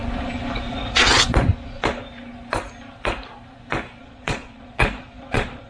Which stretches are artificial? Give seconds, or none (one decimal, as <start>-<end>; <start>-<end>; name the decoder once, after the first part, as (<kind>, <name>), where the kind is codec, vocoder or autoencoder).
0.7-1.1 (vocoder, Vocos); 4.0-5.7